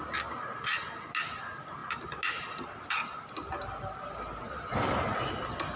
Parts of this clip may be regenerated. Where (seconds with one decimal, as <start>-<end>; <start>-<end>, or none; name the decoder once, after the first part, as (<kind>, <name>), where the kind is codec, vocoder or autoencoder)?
none